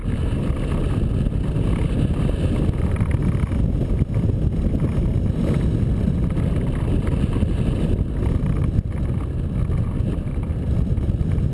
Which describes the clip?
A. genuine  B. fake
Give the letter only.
A